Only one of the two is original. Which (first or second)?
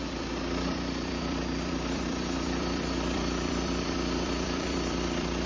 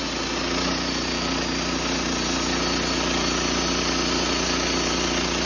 second